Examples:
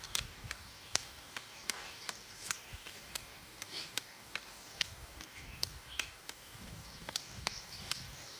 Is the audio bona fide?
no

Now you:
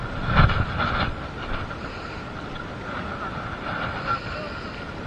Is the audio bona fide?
yes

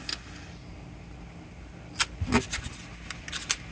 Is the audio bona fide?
yes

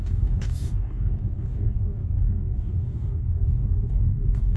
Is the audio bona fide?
no